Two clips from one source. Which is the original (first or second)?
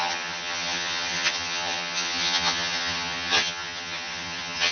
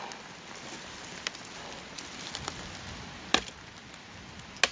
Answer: second